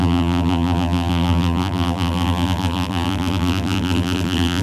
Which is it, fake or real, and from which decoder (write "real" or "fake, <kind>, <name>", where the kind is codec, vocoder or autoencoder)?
fake, vocoder, BigVGAN v2